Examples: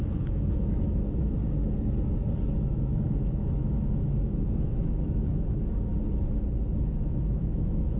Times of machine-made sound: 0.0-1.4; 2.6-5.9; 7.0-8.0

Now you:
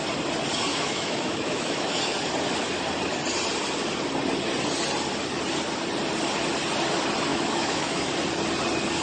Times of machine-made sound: 0.7-2.0; 7.3-8.1

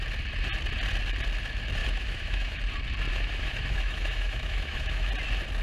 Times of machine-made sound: 1.8-2.6; 3.1-5.1

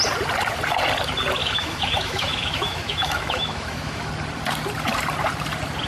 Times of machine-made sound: 1.4-4.1